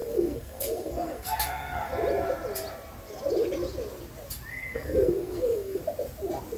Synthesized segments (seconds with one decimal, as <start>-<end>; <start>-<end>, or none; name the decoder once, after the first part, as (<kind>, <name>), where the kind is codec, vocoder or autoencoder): 0.0-1.9 (codec, SNAC); 4.5-5.8